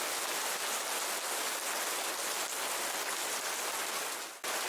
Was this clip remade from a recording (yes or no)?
no